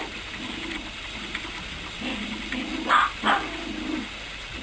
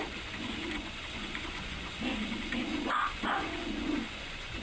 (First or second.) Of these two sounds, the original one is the first